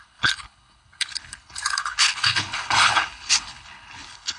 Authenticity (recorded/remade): remade